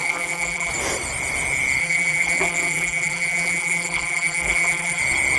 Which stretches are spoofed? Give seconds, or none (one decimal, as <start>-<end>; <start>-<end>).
0.0-0.7; 1.8-5.0